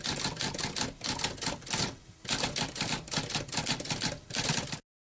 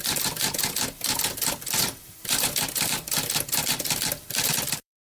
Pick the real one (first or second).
first